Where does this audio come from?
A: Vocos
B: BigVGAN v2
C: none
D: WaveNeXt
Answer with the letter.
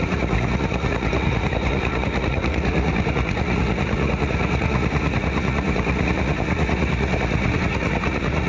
A